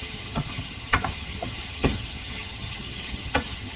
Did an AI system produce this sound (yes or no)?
yes